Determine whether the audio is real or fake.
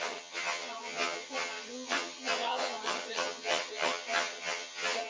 fake